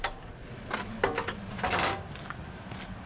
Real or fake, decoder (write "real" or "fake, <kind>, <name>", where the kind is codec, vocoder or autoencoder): real